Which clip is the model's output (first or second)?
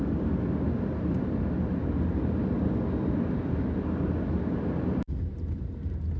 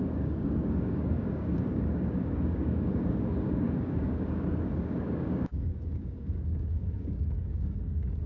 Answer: second